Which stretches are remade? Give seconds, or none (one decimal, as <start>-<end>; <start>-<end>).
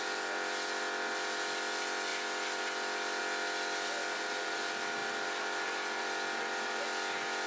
none